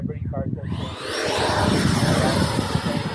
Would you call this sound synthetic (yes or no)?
no